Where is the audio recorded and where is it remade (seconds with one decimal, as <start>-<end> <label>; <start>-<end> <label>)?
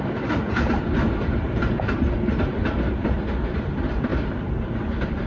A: 0.0-5.3 remade